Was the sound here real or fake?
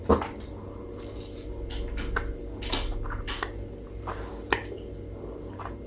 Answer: real